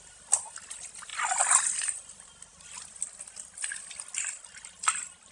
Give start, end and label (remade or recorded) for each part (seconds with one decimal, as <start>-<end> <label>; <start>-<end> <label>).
0.0-5.3 recorded